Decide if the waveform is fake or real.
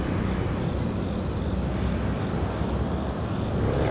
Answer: real